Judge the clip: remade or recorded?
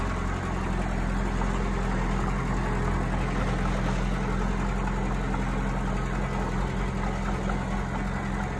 recorded